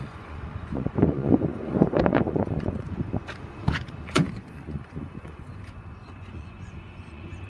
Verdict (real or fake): fake